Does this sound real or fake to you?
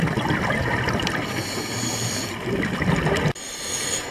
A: real